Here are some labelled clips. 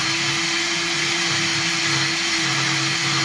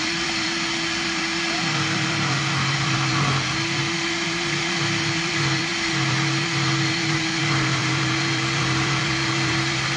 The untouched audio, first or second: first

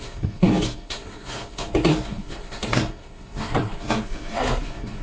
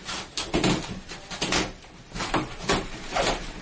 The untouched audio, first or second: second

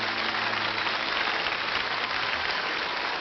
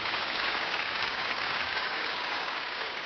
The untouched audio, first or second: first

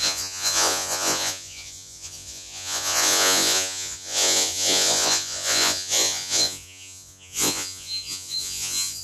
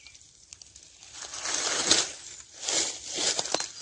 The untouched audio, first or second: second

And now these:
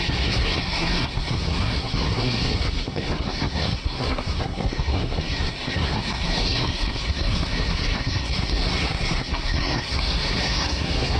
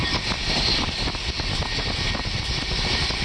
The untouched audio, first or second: second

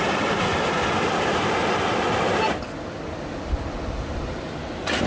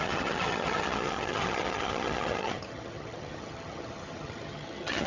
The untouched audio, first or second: first